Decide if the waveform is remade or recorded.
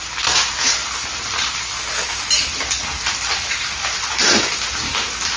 recorded